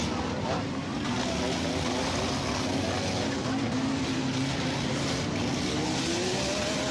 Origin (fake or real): real